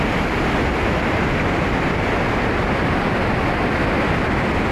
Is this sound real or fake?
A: real